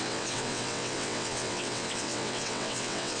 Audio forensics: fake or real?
fake